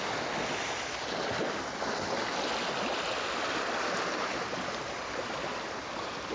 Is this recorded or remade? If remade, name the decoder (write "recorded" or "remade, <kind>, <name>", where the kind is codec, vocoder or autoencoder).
recorded